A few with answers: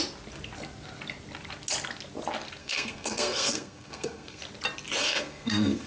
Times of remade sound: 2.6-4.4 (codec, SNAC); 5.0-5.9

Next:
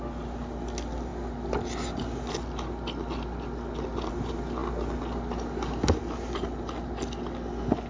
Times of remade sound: none

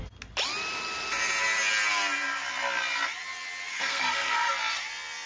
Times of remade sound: 3.7-4.5 (codec, SNAC)